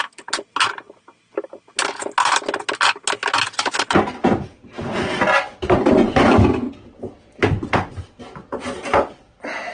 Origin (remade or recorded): recorded